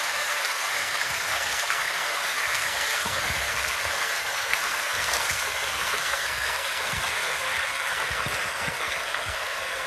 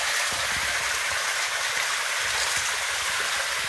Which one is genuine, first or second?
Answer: second